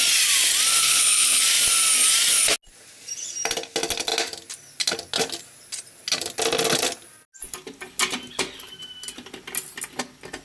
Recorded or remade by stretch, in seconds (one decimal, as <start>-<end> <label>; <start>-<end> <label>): 0.0-0.8 recorded; 0.8-1.4 remade; 1.4-10.4 recorded